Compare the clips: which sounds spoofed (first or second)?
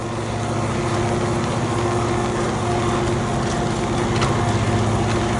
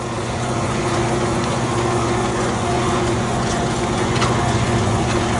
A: second